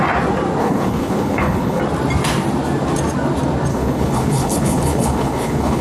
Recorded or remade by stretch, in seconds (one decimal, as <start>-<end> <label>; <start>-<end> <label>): 0.0-0.6 recorded; 0.6-1.8 remade; 1.8-3.7 recorded; 3.7-5.8 remade